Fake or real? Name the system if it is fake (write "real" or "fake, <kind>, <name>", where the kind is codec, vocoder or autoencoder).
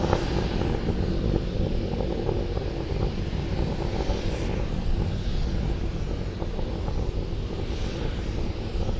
real